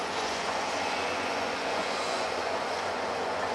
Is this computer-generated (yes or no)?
yes